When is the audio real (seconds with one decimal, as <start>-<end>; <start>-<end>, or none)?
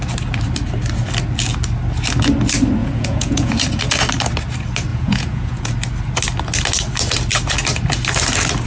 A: 0.0-2.8; 3.5-4.9; 5.7-8.7